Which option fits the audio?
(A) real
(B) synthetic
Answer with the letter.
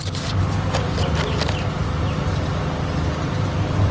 A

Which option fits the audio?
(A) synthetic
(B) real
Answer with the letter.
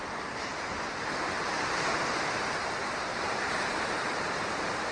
A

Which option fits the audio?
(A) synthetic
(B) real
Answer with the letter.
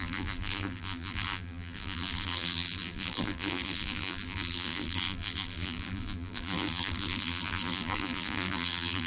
A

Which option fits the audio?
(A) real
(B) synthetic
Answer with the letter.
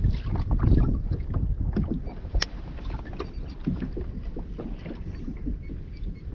A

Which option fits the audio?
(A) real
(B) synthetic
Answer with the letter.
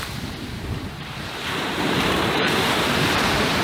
B